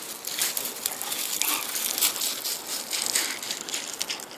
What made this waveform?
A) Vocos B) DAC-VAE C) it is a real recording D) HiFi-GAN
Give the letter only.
C